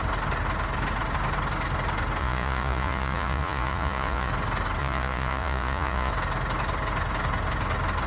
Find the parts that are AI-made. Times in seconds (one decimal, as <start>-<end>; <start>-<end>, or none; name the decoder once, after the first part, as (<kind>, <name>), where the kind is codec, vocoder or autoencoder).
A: 2.2-4.3 (vocoder, Vocos); 4.8-6.1